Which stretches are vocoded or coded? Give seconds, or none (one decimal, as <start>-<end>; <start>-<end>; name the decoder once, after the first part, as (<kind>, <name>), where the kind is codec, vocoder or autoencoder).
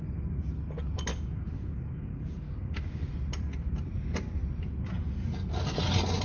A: 1.1-3.1 (codec, DAC)